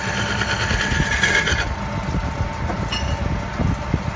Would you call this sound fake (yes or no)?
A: no